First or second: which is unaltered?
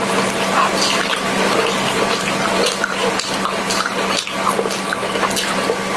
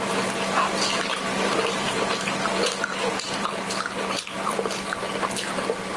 first